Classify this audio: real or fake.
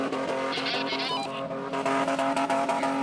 real